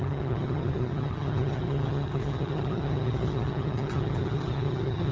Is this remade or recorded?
remade